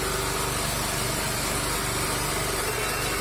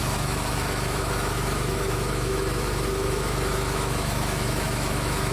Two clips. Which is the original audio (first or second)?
first